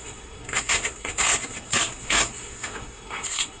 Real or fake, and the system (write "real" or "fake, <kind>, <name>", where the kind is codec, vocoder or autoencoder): fake, codec, SNAC